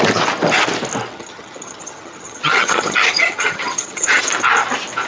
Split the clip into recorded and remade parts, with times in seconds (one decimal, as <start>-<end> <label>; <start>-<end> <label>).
0.0-1.1 recorded; 1.1-4.2 remade; 4.2-5.1 recorded